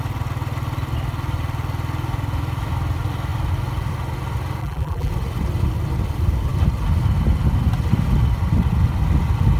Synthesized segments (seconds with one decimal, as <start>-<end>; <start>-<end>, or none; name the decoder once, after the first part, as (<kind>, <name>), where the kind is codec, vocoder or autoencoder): 4.6-5.1 (vocoder, BigVGAN v2)